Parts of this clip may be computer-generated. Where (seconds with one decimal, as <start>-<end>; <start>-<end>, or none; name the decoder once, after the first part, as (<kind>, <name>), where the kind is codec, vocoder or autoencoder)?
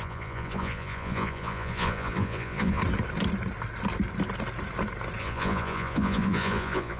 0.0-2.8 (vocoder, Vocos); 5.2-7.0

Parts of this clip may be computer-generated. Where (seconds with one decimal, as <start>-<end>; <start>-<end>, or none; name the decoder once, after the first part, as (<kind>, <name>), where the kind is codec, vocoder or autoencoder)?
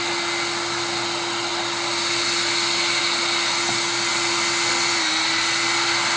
none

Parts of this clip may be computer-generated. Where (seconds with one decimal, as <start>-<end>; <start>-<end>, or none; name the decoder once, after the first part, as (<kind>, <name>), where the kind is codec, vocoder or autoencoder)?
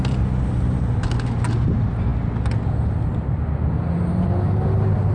none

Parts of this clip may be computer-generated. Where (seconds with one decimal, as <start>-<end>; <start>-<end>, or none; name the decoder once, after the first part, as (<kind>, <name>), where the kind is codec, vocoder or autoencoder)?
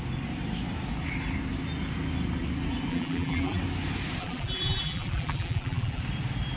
2.9-3.6 (vocoder, BigVGAN v2); 4.2-6.0